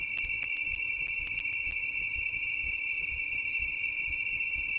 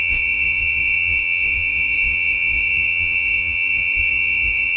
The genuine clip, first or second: first